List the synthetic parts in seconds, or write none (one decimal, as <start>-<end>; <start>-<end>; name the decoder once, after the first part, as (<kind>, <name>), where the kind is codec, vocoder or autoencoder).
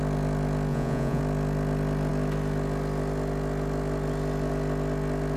0.7-1.2 (vocoder, Vocos)